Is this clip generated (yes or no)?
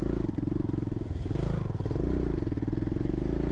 no